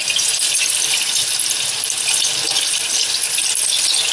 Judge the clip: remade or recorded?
recorded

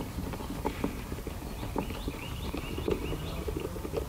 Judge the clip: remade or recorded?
recorded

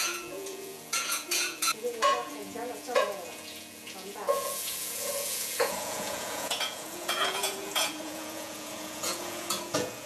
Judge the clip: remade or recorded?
remade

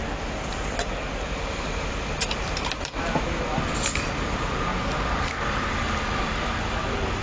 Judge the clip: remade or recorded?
recorded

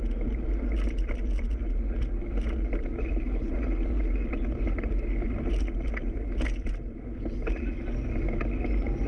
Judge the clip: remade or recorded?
recorded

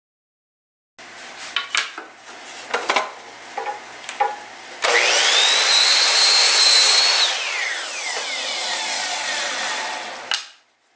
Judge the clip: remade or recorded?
recorded